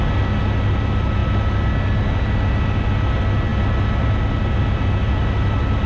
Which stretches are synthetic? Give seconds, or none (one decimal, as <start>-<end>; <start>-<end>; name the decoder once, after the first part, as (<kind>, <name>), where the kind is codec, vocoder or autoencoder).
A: none